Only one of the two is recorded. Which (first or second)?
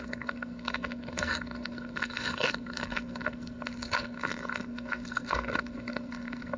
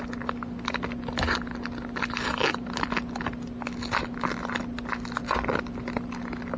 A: second